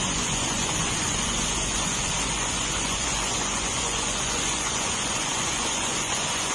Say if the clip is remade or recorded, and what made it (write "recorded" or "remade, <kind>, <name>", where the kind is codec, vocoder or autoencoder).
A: remade, vocoder, Vocos